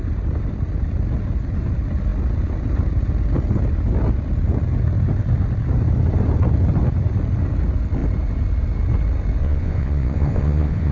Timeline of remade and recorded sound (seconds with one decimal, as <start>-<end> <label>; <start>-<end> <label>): 0.0-9.4 recorded; 9.4-10.9 remade